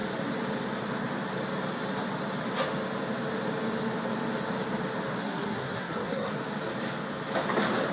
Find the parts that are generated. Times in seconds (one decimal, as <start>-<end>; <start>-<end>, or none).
5.2-6.3